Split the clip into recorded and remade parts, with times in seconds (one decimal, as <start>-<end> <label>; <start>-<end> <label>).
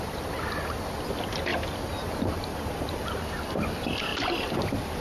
0.0-1.5 recorded; 1.5-3.4 remade; 3.4-4.1 recorded; 4.1-4.6 remade; 4.6-5.0 recorded